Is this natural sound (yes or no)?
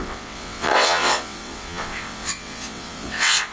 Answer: no